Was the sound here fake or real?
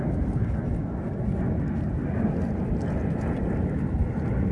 real